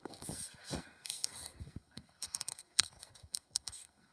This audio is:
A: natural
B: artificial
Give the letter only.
B